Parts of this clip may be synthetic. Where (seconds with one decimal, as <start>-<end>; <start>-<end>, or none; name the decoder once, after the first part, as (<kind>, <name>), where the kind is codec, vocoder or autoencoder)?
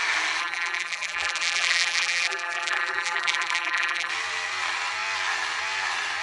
0.4-4.1 (vocoder, BigVGAN v2)